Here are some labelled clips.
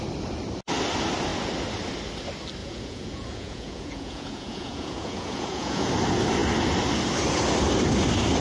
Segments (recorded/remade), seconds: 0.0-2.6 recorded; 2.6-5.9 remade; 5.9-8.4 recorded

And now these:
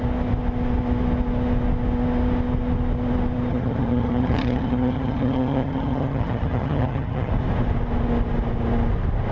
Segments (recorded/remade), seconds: 0.0-3.5 recorded; 3.5-7.3 remade; 7.3-9.3 recorded

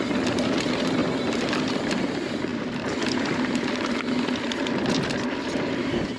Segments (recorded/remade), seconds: 0.0-1.0 recorded; 1.0-1.8 remade; 1.8-2.5 recorded; 2.5-6.2 remade

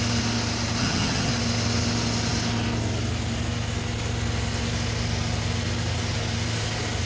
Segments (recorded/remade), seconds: 0.0-0.8 recorded; 0.8-1.3 remade; 1.3-7.1 recorded

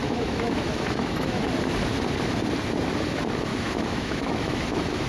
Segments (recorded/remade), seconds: 0.0-1.4 remade; 1.4-3.5 recorded; 3.5-4.6 remade; 4.6-5.1 recorded

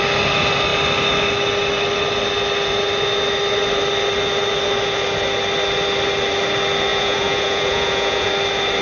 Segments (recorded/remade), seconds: 0.0-6.9 recorded; 6.9-8.3 remade; 8.3-8.8 recorded

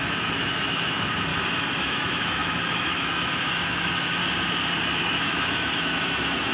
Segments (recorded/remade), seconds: 0.0-1.3 remade; 1.3-1.8 recorded; 1.8-4.2 remade; 4.2-5.0 recorded; 5.0-6.5 remade

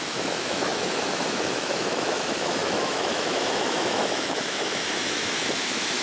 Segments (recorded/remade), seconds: 0.0-6.0 remade